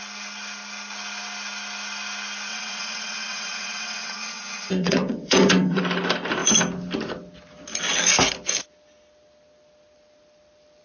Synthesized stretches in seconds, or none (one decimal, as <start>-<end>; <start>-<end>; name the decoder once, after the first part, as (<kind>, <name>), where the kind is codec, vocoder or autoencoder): 2.5-5.8 (vocoder, WaveNeXt)